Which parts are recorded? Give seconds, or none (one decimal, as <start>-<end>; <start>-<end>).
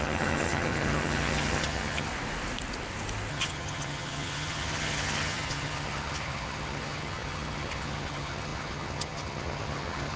2.1-3.3